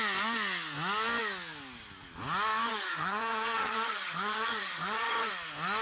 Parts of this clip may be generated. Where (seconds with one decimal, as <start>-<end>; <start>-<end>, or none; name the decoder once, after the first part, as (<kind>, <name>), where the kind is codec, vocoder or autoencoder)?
2.7-5.3 (vocoder, HiFi-GAN)